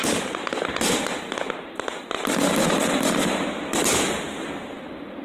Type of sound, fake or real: real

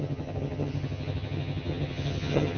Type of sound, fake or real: fake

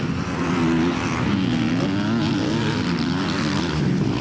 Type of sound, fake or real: real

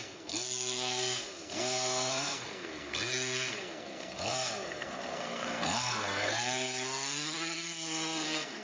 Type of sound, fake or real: fake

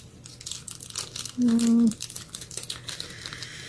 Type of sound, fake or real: real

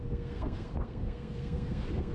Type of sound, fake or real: fake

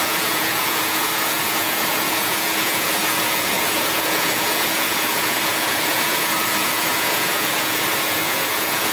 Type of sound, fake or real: fake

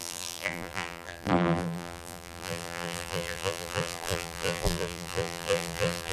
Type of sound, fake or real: fake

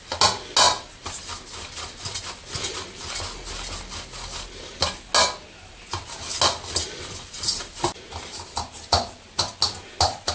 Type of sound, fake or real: real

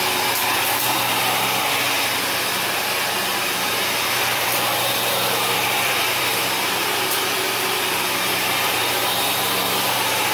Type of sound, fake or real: fake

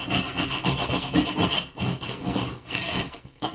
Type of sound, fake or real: fake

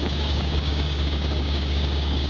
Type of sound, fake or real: fake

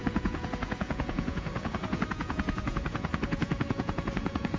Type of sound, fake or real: fake